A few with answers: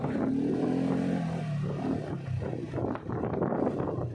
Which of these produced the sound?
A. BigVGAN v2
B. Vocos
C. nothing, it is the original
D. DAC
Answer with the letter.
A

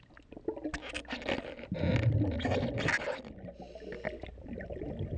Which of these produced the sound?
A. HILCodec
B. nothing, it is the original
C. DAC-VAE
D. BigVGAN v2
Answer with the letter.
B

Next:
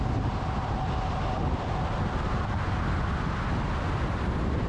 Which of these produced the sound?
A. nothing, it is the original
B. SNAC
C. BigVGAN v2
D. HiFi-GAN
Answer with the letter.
A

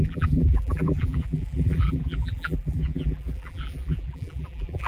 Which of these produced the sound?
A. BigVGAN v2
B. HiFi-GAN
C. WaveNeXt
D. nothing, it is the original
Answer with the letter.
A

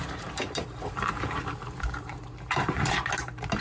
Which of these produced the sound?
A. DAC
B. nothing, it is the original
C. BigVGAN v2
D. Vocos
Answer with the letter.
C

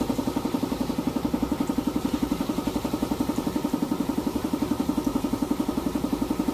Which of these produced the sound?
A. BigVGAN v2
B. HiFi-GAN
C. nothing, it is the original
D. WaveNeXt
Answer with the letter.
A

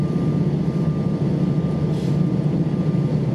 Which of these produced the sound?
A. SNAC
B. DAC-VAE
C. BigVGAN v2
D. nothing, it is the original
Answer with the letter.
D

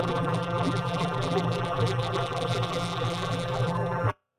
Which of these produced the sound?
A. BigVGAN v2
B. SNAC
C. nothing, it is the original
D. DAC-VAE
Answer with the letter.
A